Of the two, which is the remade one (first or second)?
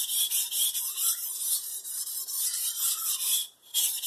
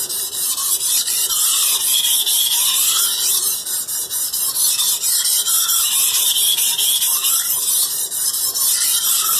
first